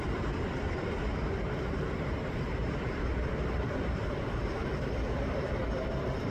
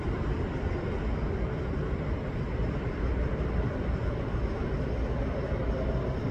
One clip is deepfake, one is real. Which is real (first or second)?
second